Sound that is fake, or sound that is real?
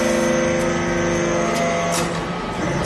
real